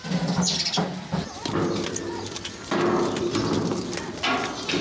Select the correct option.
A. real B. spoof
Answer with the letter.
A